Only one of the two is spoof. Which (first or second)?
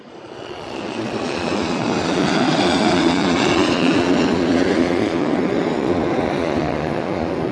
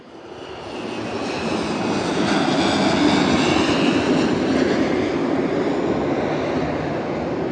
first